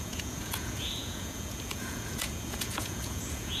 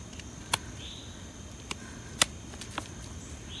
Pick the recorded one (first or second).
second